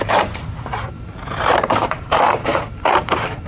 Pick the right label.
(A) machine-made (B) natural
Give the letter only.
A